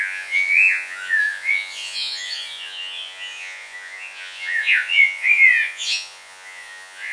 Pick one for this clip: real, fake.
fake